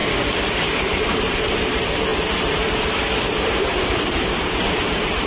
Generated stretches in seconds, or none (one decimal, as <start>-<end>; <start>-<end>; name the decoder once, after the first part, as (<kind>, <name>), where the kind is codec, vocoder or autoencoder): 0.9-2.1 (vocoder, BigVGAN v2); 3.7-5.3